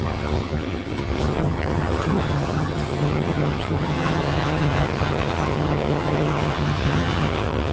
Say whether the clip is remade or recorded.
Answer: remade